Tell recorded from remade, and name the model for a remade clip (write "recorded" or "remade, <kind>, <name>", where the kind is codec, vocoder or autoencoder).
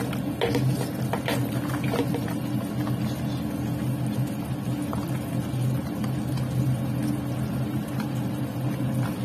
recorded